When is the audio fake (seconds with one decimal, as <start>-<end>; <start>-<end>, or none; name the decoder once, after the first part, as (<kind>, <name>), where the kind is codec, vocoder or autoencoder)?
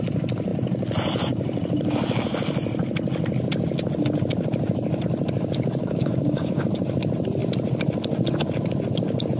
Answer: 5.8-6.6 (codec, DAC)